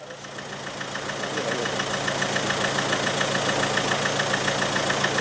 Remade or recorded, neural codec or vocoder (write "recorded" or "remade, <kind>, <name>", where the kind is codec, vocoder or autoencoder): recorded